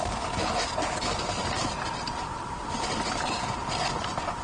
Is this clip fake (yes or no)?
no